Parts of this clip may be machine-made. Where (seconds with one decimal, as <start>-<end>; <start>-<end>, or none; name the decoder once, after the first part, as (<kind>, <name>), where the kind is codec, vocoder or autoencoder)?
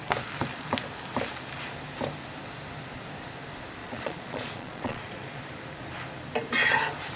3.8-5.4 (vocoder, Vocos)